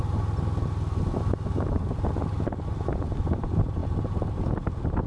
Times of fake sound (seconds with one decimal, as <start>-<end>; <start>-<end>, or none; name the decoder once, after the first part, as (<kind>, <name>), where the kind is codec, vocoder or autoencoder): none